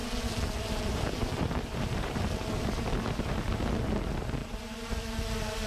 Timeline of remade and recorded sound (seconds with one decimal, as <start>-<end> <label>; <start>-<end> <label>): 0.0-3.4 remade; 3.4-4.4 recorded; 4.4-4.9 remade; 4.9-5.7 recorded